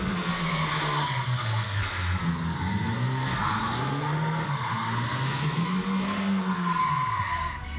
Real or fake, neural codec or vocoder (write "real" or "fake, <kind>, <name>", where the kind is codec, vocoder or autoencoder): fake, codec, SNAC